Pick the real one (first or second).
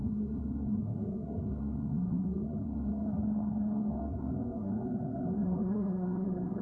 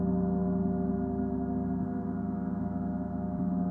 second